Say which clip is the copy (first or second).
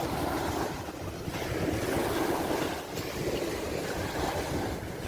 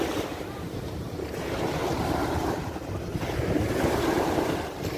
second